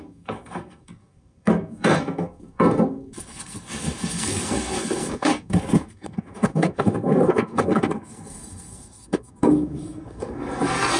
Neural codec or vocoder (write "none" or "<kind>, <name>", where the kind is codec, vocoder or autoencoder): codec, SNAC